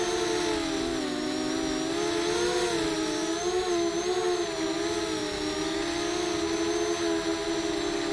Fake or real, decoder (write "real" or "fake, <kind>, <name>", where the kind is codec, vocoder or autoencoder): real